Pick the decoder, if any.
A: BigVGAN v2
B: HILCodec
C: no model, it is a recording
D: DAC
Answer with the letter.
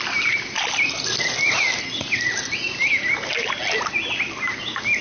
C